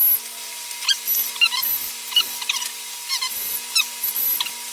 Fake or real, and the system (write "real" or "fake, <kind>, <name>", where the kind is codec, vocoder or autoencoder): real